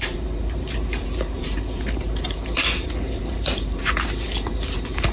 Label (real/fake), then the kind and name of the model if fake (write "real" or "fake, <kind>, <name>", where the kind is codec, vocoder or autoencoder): fake, vocoder, BigVGAN v2